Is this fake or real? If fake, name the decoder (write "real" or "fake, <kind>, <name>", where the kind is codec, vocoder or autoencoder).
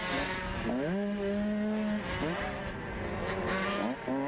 real